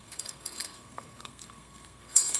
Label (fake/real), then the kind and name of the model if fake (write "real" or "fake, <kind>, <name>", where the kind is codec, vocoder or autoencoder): fake, codec, SNAC